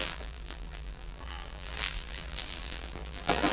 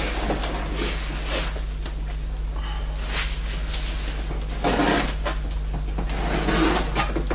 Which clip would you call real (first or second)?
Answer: second